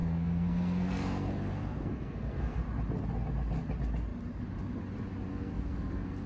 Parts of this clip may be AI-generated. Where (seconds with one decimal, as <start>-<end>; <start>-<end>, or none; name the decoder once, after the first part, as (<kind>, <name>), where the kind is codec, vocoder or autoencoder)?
0.0-2.6 (codec, SNAC); 5.3-6.3